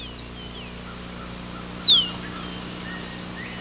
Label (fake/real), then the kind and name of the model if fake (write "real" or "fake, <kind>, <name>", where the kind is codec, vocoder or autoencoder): real